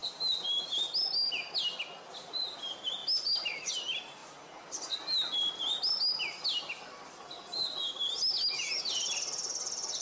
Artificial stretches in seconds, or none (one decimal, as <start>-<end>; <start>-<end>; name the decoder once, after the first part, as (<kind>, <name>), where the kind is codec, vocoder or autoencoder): 0.0-0.9 (vocoder, BigVGAN v2)